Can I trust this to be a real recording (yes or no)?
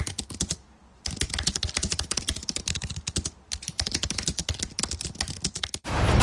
yes